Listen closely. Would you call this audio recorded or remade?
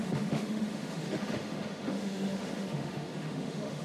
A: remade